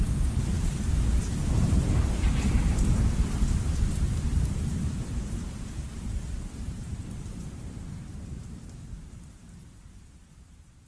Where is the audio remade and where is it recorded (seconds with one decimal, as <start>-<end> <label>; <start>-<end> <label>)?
0.0-0.5 remade; 0.5-1.6 recorded; 1.6-10.9 remade

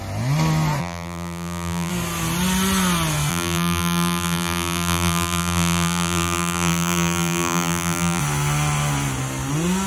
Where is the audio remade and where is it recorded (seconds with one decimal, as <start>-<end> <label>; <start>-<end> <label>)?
0.0-0.8 recorded; 0.8-1.9 remade; 1.9-3.3 recorded; 3.3-8.2 remade; 8.2-9.9 recorded